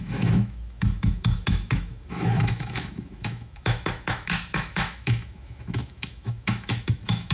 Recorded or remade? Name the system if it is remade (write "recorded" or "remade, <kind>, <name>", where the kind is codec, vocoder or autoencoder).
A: remade, autoencoder, DAC-VAE